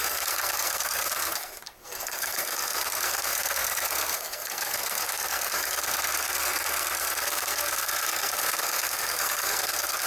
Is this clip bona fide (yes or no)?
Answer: no